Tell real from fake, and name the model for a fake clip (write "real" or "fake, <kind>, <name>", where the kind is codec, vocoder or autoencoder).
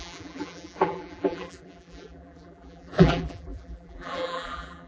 fake, vocoder, BigVGAN v2